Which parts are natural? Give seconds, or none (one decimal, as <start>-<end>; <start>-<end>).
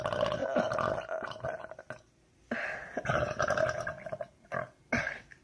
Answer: 0.0-5.4